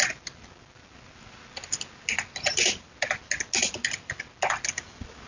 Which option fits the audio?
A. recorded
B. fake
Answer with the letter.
A